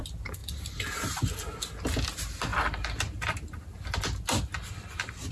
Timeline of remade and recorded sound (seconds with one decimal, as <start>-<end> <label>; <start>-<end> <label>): 0.0-5.3 recorded